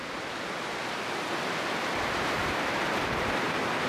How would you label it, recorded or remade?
recorded